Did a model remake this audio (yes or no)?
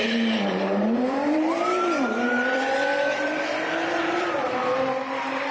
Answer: yes